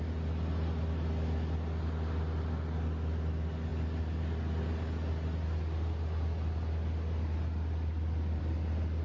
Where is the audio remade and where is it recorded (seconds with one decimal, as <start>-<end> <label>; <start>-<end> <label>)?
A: 0.0-9.0 recorded